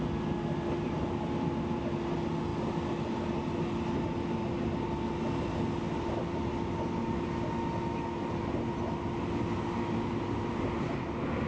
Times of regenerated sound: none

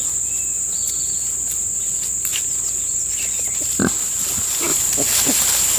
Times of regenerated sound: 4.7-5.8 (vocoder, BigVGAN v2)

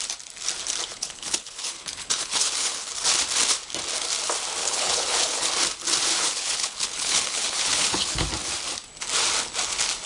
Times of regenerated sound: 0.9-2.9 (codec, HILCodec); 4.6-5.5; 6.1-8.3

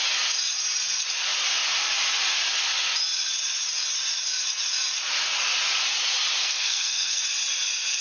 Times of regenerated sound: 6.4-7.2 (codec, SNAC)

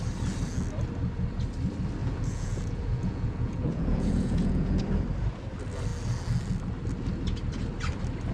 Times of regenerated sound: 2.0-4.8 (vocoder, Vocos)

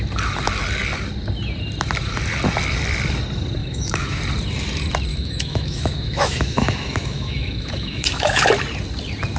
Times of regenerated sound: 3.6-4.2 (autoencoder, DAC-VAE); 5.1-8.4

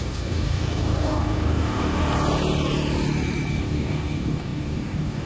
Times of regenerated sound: 0.0-2.0 (codec, DAC); 3.6-5.3